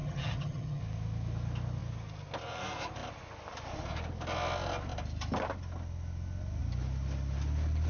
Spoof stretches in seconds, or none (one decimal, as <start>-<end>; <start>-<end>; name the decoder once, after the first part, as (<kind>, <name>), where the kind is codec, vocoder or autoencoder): 0.0-0.8 (vocoder, HiFi-GAN)